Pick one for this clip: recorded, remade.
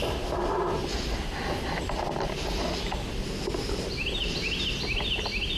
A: recorded